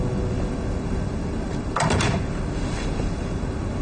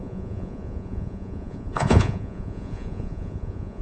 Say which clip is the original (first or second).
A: first